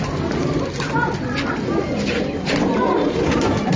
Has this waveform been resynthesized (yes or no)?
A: no